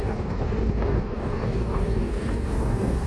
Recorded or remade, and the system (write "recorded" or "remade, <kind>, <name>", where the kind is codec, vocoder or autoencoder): remade, codec, DAC